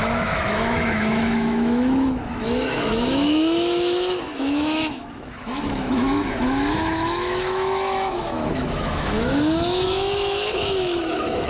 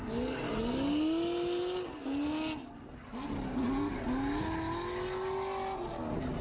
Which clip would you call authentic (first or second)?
second